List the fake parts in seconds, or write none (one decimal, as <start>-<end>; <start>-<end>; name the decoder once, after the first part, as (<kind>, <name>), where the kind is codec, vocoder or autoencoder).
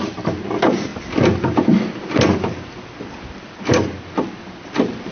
none